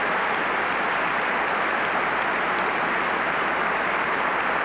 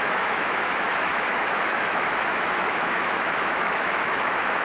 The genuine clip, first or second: first